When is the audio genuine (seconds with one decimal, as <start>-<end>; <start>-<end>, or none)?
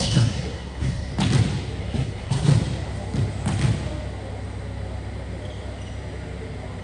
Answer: 1.1-1.8; 2.5-6.8